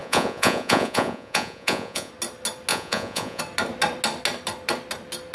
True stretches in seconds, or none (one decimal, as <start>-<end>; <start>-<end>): 2.1-2.7; 3.4-5.3